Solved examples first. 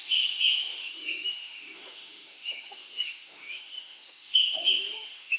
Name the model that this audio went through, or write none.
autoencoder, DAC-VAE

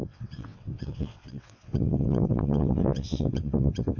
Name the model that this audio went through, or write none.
vocoder, WaveNeXt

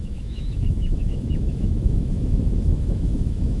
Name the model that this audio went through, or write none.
autoencoder, DAC-VAE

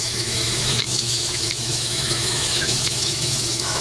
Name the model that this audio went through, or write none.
autoencoder, DAC-VAE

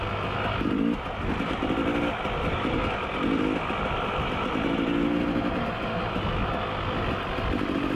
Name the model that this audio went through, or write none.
none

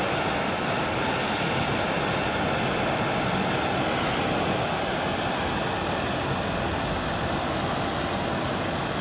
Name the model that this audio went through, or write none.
none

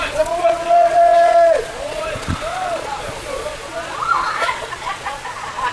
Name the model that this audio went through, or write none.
vocoder, Vocos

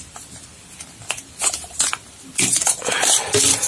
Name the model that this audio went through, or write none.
vocoder, BigVGAN v2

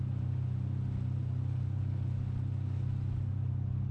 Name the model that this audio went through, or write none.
none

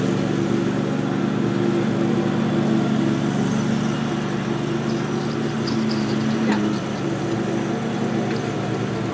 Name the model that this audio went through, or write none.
none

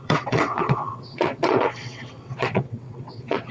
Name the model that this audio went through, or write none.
vocoder, WaveNeXt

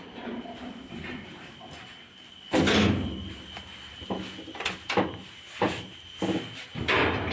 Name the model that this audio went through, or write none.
none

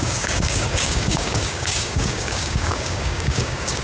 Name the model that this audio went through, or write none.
codec, DAC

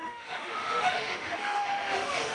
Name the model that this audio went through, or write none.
autoencoder, DAC-VAE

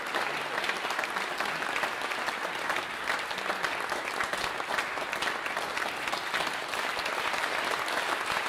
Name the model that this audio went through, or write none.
none